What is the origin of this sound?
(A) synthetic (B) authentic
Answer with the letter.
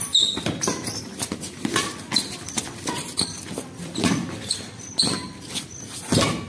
B